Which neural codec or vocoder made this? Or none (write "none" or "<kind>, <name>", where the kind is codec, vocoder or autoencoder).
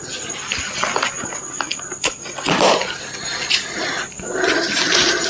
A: none